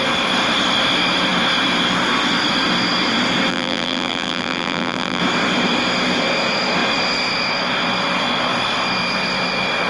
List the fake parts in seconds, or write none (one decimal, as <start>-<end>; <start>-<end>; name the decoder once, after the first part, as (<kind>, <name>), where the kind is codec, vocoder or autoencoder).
3.5-5.2 (vocoder, BigVGAN v2)